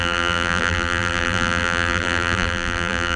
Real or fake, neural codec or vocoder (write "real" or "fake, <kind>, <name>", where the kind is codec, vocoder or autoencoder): fake, vocoder, BigVGAN v2